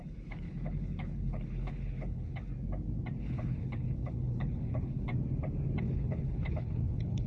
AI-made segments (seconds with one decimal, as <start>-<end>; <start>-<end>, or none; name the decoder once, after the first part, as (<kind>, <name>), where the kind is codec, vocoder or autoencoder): 0.0-2.5 (codec, HILCodec); 3.2-5.1; 5.8-7.3